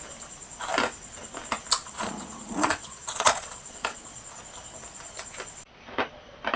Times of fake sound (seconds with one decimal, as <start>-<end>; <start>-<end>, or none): 1.8-4.4